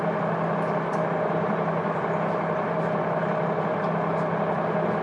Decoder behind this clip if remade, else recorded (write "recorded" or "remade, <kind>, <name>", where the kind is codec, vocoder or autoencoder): recorded